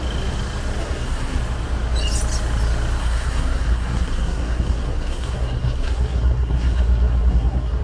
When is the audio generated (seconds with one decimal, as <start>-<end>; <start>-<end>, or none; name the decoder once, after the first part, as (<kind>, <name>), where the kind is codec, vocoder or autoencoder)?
0.8-1.4 (codec, SNAC); 3.0-7.8